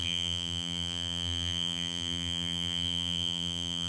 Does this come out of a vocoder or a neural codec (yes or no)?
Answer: yes